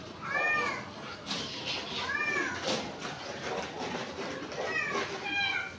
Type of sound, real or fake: real